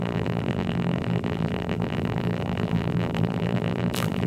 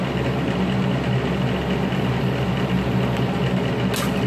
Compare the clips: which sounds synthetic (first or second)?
first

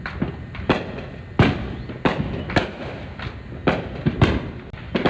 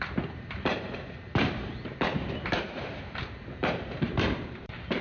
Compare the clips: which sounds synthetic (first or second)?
second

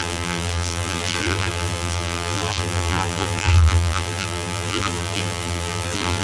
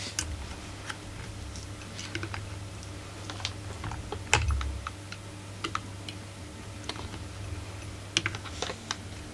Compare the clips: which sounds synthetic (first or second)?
first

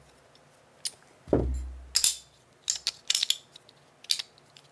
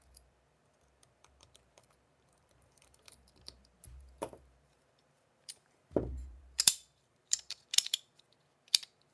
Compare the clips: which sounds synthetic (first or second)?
second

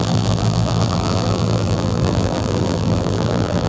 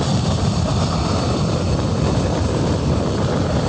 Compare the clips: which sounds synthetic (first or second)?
first